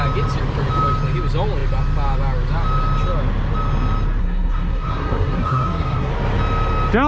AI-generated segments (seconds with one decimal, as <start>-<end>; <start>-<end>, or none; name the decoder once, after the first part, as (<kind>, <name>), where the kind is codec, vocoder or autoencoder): 4.2-6.1 (codec, SNAC)